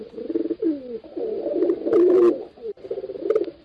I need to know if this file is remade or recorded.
recorded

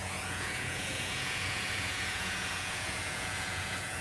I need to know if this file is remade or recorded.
remade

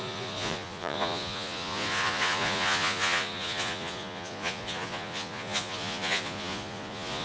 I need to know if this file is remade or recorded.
remade